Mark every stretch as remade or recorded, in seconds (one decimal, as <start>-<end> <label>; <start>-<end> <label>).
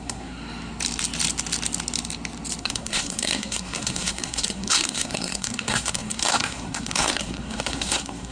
0.0-0.4 remade; 0.4-2.6 recorded; 2.6-8.3 remade